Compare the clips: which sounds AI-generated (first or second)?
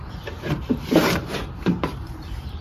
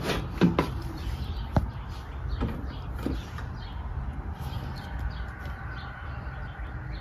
first